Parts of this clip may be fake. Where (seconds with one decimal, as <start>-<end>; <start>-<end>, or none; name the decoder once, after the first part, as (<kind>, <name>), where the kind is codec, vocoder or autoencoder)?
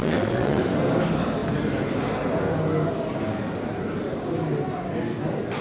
0.0-0.6 (vocoder, WaveNeXt)